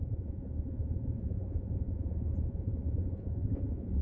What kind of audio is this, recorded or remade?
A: remade